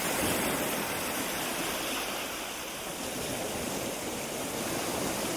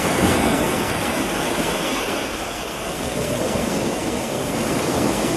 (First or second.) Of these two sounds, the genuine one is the first